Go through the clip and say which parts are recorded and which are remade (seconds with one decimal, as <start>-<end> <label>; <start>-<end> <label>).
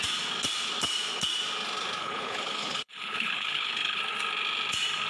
0.0-2.0 recorded; 2.0-4.0 remade; 4.0-5.1 recorded